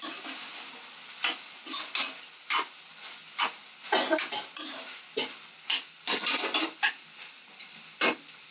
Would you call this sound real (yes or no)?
yes